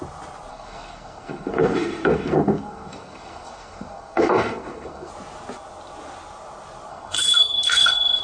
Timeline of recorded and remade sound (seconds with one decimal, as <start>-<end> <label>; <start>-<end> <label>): 0.0-0.5 recorded; 0.5-5.1 remade; 5.1-6.9 recorded; 6.9-8.2 remade